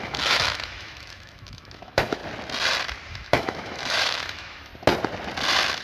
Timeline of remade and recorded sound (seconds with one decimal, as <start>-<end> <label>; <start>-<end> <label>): 0.0-2.2 remade; 2.2-3.1 recorded; 3.1-4.7 remade; 4.7-5.8 recorded